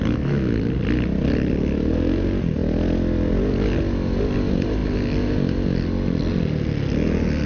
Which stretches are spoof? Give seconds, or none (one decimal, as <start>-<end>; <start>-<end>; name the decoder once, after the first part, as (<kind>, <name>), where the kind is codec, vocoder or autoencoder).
none